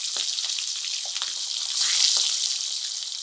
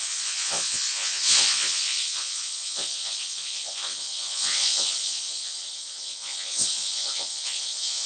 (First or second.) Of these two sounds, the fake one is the second